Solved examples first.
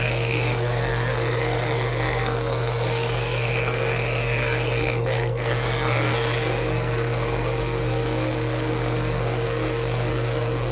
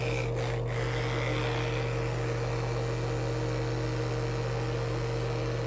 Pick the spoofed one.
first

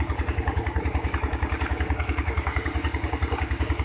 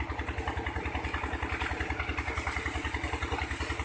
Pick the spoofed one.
first